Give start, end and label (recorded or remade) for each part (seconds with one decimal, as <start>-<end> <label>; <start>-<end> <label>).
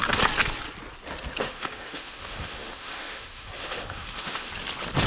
0.0-1.4 recorded; 1.4-4.5 remade; 4.5-5.1 recorded